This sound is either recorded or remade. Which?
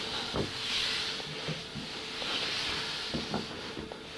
recorded